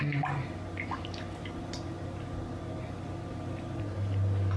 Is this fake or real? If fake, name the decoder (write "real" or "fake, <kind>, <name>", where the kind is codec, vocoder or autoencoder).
real